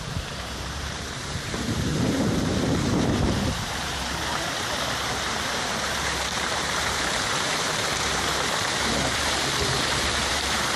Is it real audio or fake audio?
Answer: fake